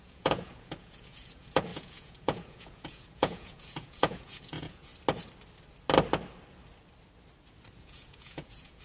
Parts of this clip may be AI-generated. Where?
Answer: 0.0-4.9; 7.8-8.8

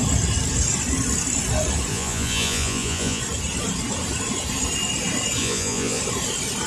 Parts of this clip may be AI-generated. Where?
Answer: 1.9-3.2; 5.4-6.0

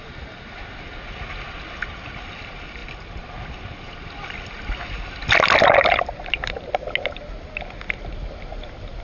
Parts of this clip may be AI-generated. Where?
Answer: none

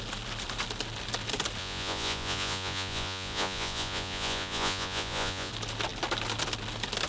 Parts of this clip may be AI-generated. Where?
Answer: 1.6-5.5

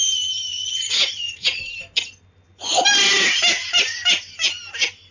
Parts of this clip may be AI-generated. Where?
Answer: 0.5-1.6